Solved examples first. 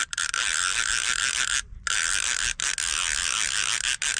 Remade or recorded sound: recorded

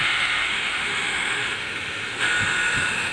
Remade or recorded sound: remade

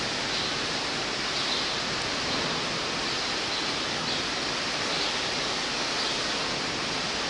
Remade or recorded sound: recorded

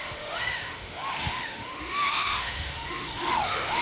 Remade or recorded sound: remade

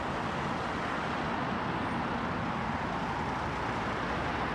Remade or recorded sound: recorded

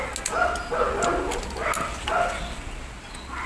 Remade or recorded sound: recorded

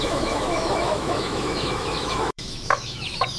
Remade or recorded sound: remade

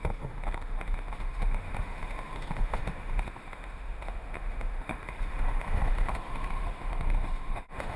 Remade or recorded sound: remade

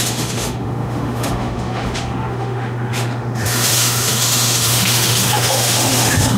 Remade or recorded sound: remade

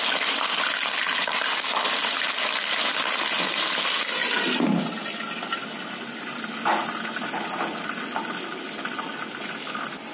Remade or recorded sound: recorded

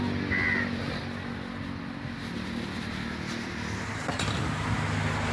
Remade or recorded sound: recorded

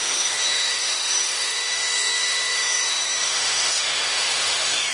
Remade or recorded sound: remade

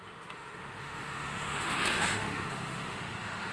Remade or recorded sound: remade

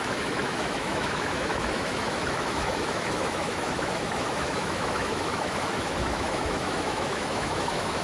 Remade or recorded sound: remade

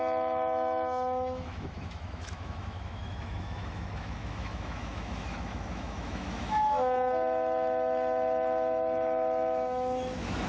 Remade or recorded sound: remade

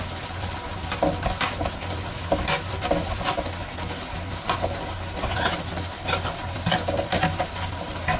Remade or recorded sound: recorded